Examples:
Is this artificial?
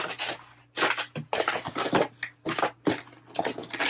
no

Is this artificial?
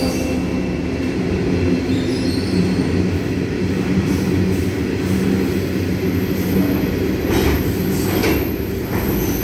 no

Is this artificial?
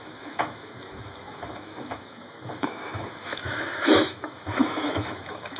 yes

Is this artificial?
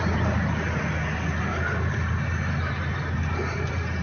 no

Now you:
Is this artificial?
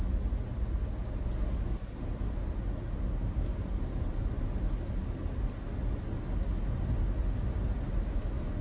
no